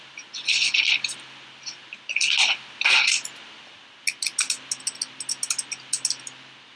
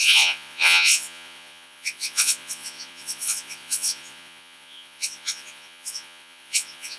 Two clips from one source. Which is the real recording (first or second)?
first